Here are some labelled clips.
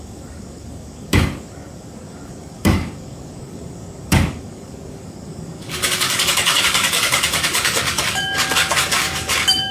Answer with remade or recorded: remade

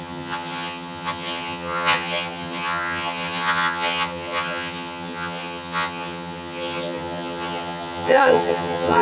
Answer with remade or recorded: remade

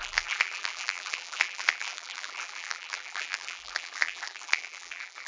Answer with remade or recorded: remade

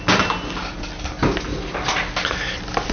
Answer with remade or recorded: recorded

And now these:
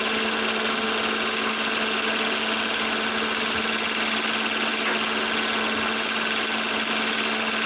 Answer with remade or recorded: recorded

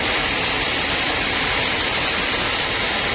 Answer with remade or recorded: recorded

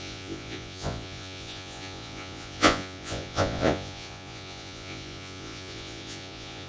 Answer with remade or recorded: remade